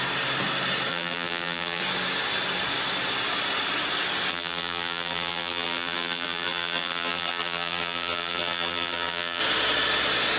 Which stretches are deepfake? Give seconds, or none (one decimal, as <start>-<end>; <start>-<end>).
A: 0.9-1.8; 4.3-9.4